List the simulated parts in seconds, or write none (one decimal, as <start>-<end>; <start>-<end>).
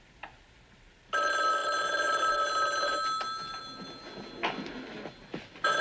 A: none